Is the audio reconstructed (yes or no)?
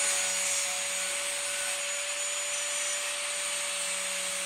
no